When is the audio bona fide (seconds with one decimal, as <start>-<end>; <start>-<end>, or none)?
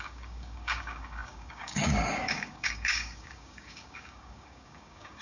none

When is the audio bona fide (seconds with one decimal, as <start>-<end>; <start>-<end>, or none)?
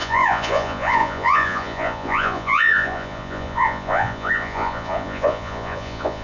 none